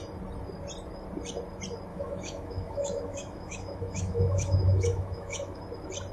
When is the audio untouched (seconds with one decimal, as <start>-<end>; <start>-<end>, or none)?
0.0-1.9; 5.6-6.1